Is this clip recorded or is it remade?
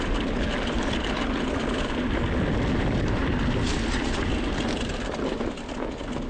recorded